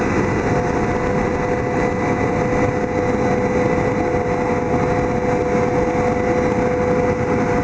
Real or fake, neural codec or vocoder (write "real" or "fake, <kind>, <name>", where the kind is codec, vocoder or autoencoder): real